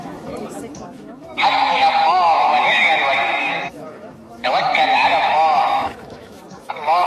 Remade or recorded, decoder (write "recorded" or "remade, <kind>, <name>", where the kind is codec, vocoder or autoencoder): remade, autoencoder, DAC-VAE